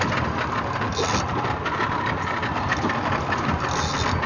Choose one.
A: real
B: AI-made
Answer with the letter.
A